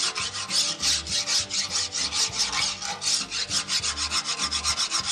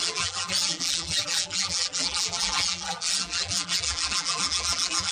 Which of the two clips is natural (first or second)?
first